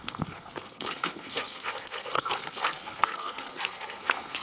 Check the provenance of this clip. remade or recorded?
remade